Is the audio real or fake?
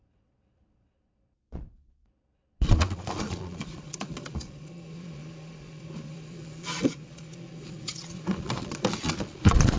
fake